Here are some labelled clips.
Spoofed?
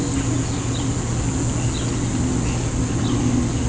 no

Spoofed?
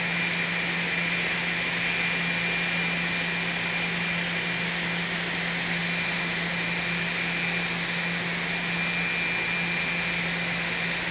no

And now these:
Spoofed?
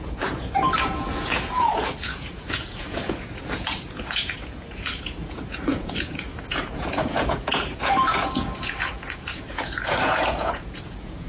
yes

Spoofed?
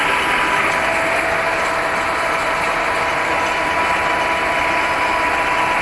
no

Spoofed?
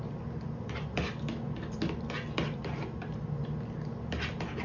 no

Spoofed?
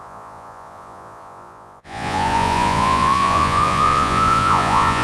yes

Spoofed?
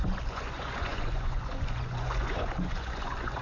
yes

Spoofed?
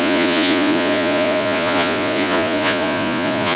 yes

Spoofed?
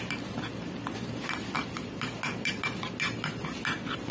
no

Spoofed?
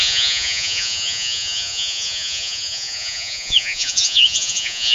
yes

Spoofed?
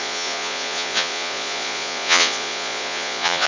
yes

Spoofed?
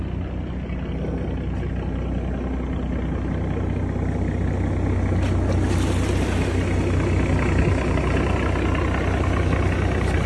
no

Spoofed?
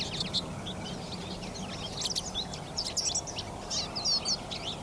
no